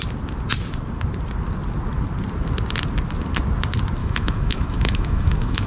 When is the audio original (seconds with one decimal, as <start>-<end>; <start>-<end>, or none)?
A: 0.0-4.0